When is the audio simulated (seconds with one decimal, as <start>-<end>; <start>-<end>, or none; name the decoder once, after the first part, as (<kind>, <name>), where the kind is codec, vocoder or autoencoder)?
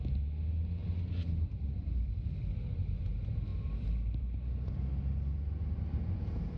0.8-3.1 (vocoder, BigVGAN v2); 3.5-4.5